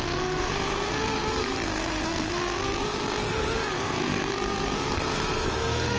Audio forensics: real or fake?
fake